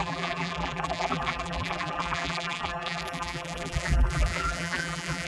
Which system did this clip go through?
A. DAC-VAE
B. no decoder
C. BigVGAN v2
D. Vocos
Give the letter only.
C